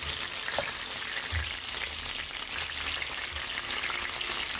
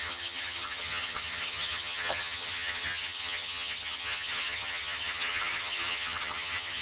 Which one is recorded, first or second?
first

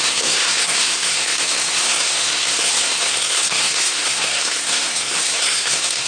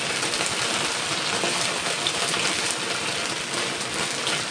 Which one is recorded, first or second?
second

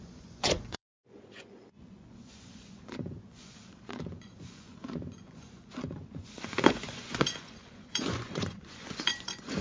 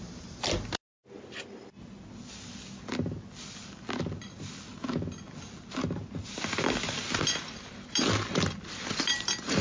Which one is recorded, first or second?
second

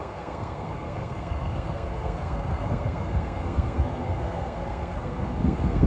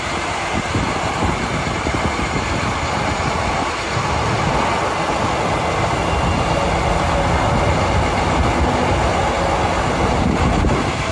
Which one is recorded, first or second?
second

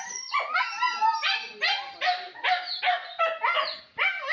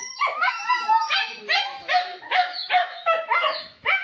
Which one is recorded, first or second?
first